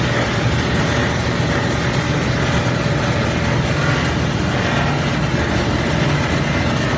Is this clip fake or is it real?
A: real